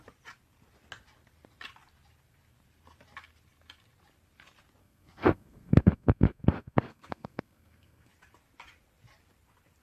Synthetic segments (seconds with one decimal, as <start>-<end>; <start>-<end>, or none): 4.8-8.1